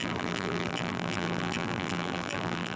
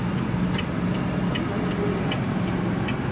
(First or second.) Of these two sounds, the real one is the second